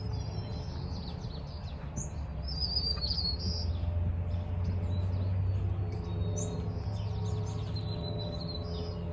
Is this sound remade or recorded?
recorded